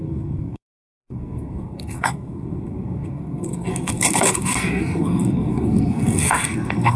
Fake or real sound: fake